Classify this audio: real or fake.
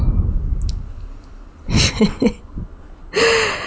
real